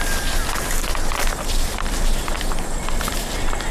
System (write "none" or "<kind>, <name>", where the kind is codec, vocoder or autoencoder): none